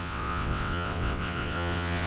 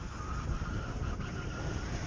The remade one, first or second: first